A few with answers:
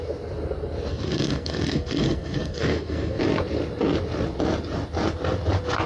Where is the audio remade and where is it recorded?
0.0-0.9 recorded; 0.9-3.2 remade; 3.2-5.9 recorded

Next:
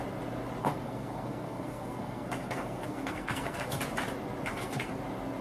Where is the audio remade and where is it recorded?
0.0-0.6 recorded; 0.6-3.8 remade; 3.8-4.5 recorded; 4.5-5.0 remade; 5.0-5.4 recorded

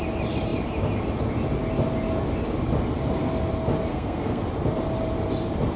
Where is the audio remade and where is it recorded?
0.0-3.9 recorded; 3.9-4.4 remade; 4.4-5.8 recorded